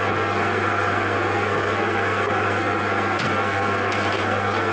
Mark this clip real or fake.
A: fake